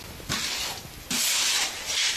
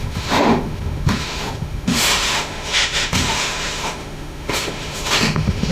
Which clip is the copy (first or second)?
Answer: second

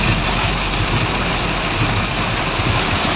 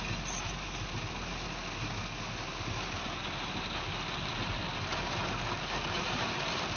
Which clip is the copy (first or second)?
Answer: first